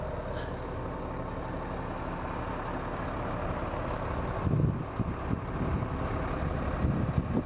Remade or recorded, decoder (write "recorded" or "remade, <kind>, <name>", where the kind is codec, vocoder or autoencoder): recorded